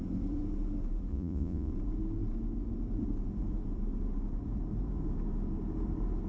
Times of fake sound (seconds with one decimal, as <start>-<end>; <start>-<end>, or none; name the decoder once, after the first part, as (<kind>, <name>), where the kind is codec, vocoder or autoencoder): 1.1-1.7 (vocoder, Vocos)